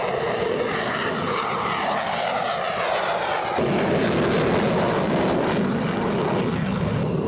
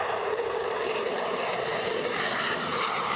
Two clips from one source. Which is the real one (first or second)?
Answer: first